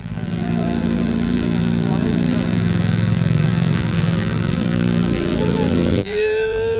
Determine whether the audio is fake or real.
fake